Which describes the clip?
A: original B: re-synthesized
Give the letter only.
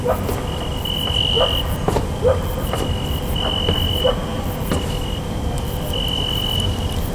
A